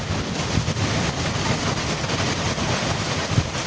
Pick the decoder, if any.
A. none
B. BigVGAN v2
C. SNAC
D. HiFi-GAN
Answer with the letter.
A